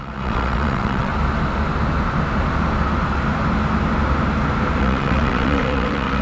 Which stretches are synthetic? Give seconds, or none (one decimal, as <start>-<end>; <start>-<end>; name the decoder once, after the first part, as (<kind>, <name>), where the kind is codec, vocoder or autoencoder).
0.0-1.1 (vocoder, WaveNeXt); 4.8-6.2